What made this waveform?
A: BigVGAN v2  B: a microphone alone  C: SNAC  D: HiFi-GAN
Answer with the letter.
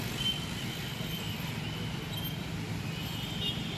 B